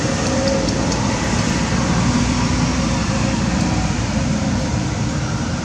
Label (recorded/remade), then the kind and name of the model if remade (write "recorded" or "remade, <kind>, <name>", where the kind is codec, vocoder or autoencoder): remade, vocoder, BigVGAN v2